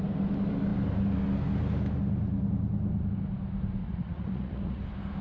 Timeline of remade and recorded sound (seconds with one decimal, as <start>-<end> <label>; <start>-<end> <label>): 0.0-3.8 recorded; 3.8-4.8 remade; 4.8-5.2 recorded